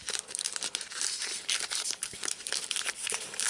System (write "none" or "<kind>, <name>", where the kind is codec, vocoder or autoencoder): none